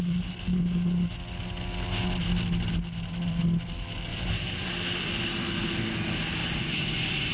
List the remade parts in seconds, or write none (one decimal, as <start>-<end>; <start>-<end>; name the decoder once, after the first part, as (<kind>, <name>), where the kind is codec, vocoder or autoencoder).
4.1-4.7 (vocoder, Vocos); 6.4-7.3